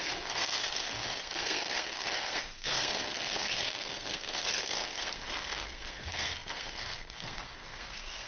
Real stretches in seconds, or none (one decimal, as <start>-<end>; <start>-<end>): none